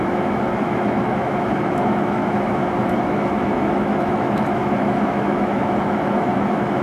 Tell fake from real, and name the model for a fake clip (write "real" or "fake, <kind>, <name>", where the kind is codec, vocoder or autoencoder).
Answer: fake, autoencoder, DAC-VAE